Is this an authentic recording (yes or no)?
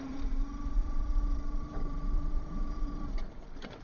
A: no